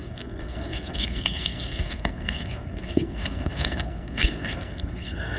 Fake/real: fake